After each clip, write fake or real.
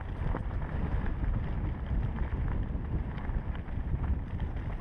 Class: fake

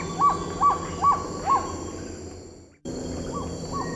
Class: real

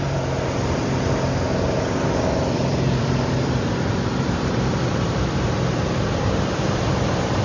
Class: fake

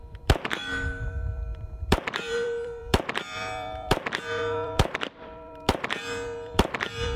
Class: fake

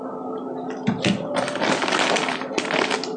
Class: real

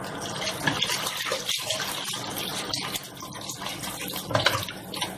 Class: real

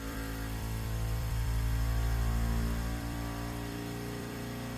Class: fake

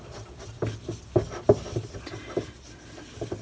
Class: real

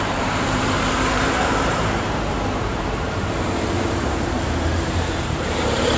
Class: fake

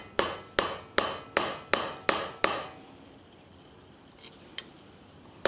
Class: real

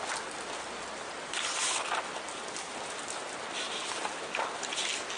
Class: real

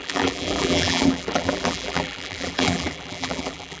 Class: fake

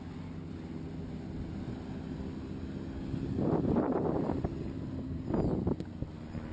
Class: real